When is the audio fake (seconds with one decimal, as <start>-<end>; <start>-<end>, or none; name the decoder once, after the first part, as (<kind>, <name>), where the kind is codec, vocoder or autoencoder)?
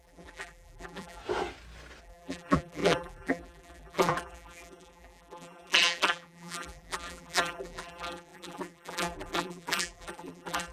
0.0-1.2 (vocoder, BigVGAN v2); 2.0-10.7